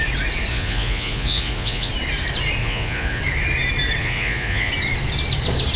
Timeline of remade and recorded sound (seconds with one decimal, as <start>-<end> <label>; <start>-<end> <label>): 0.0-0.5 recorded; 0.5-1.9 remade; 1.9-2.6 recorded; 2.6-3.2 remade; 3.2-4.0 recorded; 4.0-4.7 remade; 4.7-5.8 recorded